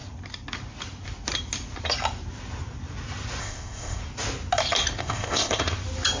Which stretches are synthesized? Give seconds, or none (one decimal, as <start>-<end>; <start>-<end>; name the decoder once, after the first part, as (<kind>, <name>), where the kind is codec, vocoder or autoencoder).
3.4-4.0 (codec, ZipCodec); 5.0-5.6